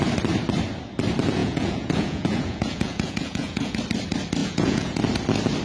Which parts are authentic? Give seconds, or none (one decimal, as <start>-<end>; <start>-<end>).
0.0-1.4; 3.8-4.4; 5.0-5.6